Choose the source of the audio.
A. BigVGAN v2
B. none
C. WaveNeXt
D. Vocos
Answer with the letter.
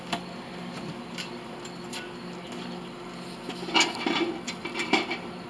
B